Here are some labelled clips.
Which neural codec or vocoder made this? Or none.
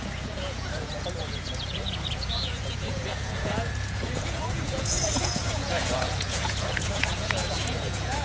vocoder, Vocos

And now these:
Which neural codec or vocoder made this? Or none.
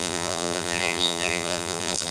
vocoder, BigVGAN v2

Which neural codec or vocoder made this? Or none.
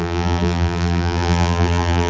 vocoder, BigVGAN v2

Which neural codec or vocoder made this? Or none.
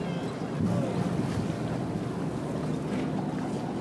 none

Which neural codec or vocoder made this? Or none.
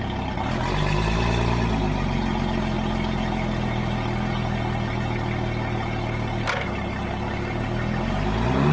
none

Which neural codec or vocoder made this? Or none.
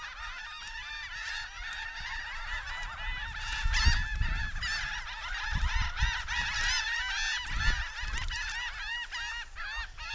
none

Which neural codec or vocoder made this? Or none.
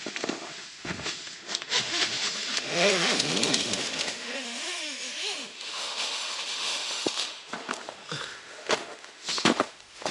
autoencoder, DAC-VAE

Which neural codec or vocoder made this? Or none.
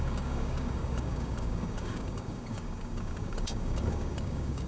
codec, DAC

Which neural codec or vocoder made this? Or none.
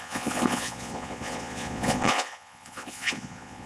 vocoder, Vocos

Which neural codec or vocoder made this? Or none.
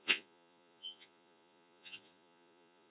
vocoder, Vocos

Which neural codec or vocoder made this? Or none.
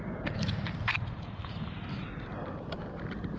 none